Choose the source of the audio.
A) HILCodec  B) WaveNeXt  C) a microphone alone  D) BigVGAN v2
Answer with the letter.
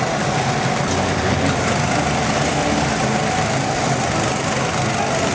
C